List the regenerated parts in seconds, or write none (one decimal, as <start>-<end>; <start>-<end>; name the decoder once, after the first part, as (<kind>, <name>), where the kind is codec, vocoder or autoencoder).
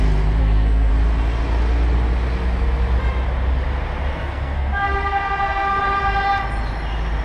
0.4-0.9 (codec, SNAC); 4.1-5.8